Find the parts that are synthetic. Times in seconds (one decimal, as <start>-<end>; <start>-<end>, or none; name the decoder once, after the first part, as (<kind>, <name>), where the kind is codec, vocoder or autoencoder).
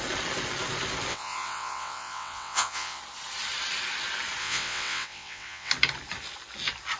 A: 1.1-3.0 (vocoder, WaveNeXt); 4.4-5.7